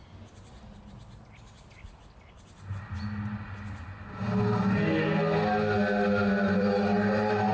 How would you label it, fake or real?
real